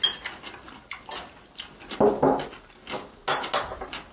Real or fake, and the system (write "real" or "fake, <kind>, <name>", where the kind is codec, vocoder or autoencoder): real